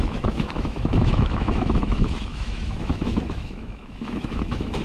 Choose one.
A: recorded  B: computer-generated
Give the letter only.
B